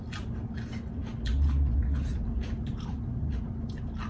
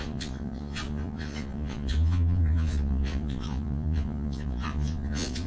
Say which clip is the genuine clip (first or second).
first